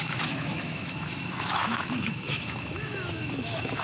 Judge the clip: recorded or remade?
remade